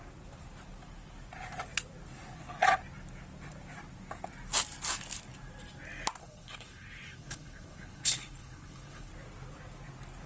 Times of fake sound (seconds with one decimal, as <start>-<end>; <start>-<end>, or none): 6.2-9.1